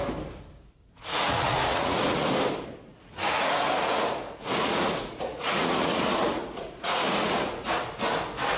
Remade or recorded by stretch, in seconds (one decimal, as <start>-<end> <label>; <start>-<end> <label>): 0.0-1.1 recorded; 1.1-2.3 remade; 2.3-2.9 recorded; 2.9-7.6 remade; 7.6-8.6 recorded